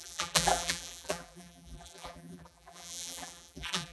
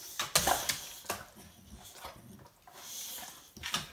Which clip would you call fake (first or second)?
first